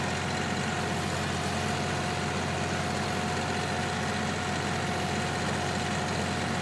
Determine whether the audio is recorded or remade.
recorded